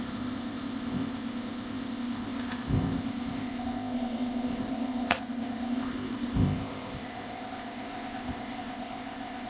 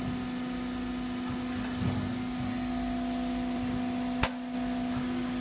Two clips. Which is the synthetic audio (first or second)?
first